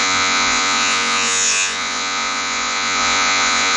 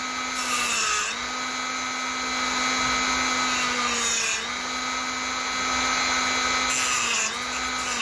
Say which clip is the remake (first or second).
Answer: first